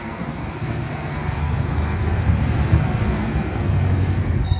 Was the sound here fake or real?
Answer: fake